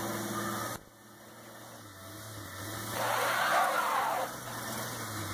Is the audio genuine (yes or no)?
yes